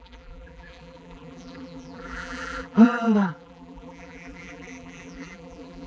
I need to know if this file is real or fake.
fake